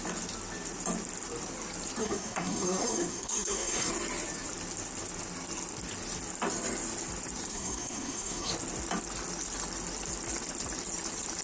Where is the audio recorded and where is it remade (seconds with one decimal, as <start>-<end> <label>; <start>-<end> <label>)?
0.0-2.0 recorded; 2.0-3.9 remade; 3.9-7.5 recorded; 7.5-8.5 remade; 8.5-11.4 recorded